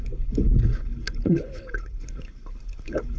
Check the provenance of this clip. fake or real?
fake